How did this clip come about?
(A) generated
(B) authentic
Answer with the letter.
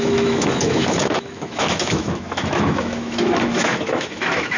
A